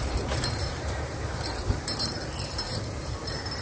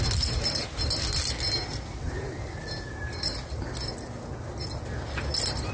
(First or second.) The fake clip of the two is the first